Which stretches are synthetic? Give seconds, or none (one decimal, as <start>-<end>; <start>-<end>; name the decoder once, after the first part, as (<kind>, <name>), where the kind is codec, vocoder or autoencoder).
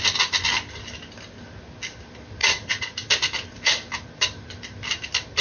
2.4-3.1 (vocoder, Vocos)